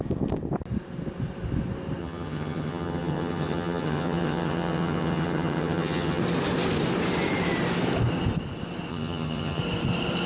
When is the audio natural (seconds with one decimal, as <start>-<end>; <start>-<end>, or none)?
0.0-2.0; 6.2-8.9; 9.6-10.3